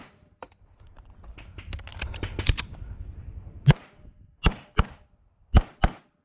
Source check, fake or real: real